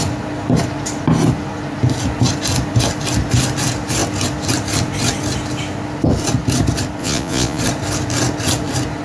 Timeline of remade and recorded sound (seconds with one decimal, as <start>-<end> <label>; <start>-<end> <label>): 0.0-7.0 recorded; 7.0-7.6 remade; 7.6-9.0 recorded